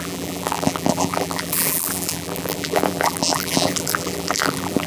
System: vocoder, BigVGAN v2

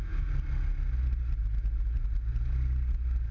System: none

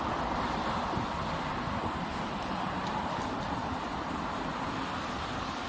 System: none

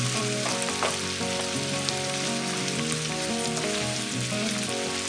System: none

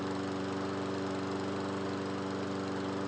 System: none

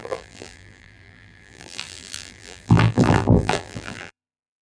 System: vocoder, BigVGAN v2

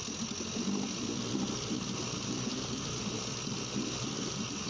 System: vocoder, BigVGAN v2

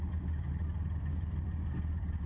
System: vocoder, BigVGAN v2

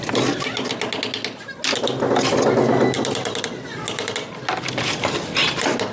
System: none